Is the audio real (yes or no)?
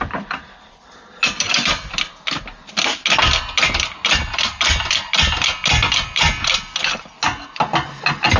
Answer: yes